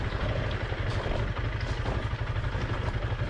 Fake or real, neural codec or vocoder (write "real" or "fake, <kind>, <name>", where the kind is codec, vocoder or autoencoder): real